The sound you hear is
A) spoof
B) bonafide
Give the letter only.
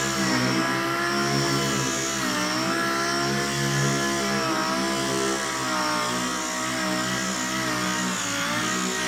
B